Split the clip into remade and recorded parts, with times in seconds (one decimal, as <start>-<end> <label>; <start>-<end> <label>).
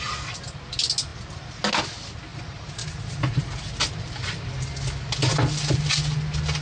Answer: 0.0-2.3 recorded; 2.3-3.3 remade; 3.3-5.2 recorded; 5.2-5.9 remade; 5.9-6.6 recorded